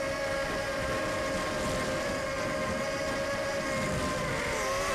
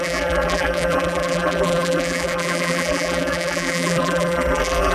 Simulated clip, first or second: second